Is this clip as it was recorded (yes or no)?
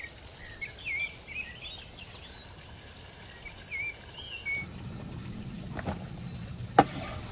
yes